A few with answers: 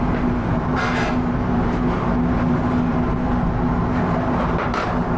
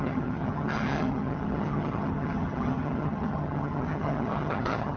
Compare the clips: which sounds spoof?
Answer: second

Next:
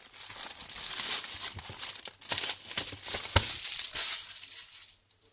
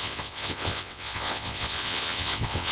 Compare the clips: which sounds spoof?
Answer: second